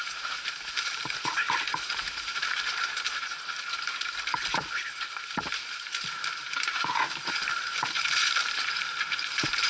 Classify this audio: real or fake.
fake